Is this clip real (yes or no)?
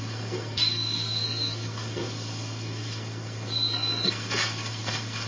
no